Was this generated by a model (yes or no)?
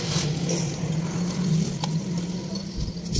no